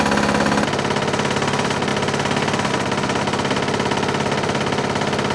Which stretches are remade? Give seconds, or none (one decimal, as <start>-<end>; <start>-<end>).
none